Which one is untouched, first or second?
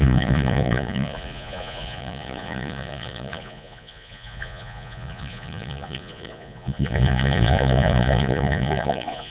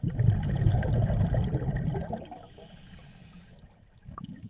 second